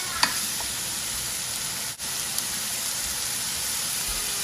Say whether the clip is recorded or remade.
recorded